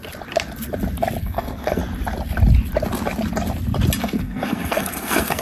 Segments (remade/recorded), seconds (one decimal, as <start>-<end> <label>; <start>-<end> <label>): 0.0-1.2 recorded; 1.2-1.8 remade; 1.8-4.0 recorded; 4.0-5.4 remade